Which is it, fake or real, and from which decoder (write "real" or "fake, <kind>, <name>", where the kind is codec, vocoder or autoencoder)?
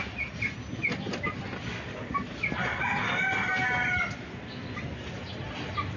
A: real